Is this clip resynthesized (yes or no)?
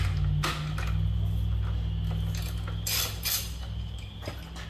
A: no